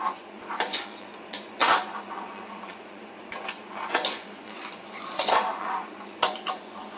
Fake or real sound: fake